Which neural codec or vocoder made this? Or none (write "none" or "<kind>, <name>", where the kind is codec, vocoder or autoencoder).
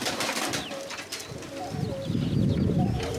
none